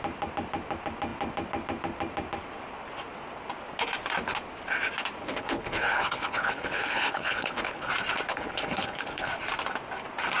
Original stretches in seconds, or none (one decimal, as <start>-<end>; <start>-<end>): 0.0-5.2; 7.9-8.3; 9.3-10.4